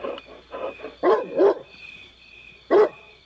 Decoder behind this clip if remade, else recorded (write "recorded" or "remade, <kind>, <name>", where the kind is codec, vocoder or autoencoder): remade, vocoder, BigVGAN v2